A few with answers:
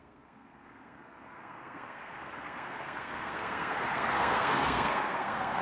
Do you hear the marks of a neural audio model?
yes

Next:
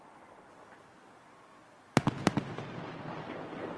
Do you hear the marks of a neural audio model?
no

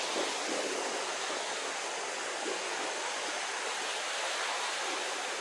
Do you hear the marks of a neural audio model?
no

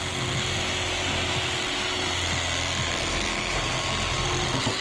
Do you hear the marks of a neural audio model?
no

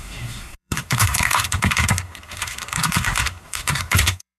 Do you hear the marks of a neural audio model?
yes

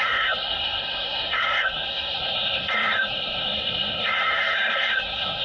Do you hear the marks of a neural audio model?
yes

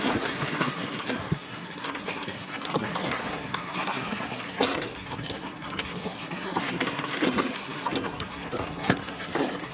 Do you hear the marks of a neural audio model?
yes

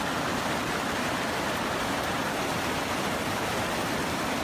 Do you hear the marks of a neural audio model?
no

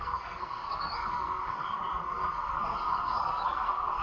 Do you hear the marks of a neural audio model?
yes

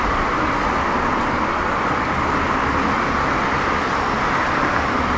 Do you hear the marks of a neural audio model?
no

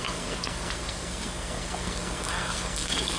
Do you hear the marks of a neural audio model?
yes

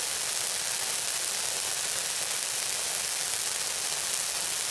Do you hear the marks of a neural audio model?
no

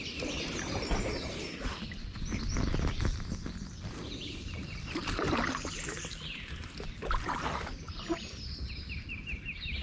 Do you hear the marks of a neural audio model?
no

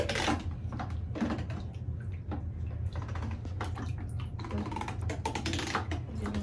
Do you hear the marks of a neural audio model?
no